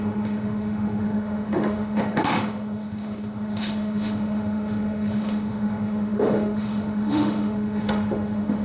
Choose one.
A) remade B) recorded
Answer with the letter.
A